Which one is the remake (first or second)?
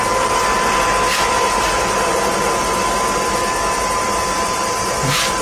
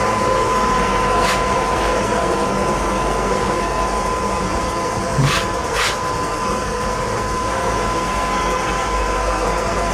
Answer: second